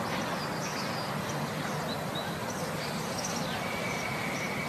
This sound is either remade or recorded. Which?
recorded